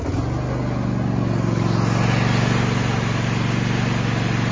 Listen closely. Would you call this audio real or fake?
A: real